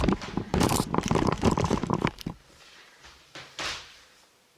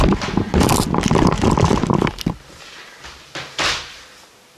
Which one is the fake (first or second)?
first